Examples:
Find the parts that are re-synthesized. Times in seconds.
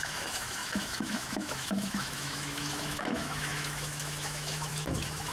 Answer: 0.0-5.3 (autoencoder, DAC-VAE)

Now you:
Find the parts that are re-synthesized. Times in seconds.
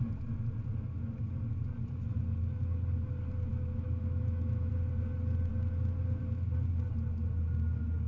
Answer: 3.5-4.7 (autoencoder, DAC-VAE)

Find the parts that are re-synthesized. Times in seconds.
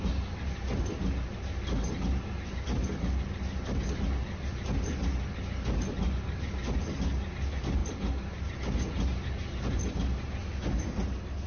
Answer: none